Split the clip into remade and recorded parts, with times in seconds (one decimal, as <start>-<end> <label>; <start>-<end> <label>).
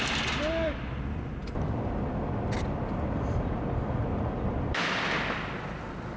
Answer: 0.0-1.4 remade; 1.4-3.1 recorded; 3.1-6.2 remade